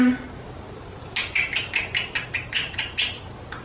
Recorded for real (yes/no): yes